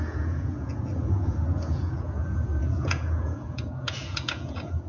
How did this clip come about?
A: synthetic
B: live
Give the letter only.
A